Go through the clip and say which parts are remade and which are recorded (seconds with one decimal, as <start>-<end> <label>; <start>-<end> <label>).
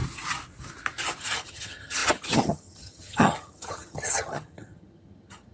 0.0-1.2 recorded; 1.2-5.5 remade